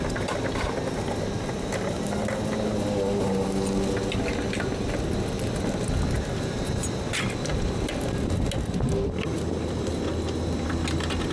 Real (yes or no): yes